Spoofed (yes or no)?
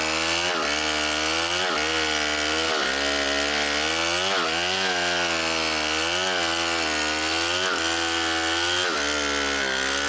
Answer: no